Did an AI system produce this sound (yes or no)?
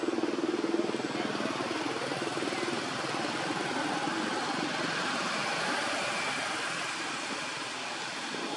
no